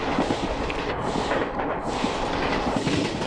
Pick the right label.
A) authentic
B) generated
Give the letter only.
A